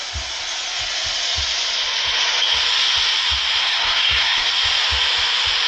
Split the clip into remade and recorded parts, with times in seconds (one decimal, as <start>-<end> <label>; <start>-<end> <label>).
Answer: 0.0-3.6 recorded; 3.6-4.5 remade; 4.5-5.7 recorded